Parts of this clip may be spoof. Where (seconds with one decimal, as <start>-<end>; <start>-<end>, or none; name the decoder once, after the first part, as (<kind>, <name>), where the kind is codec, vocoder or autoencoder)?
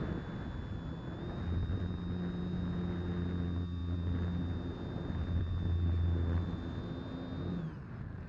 none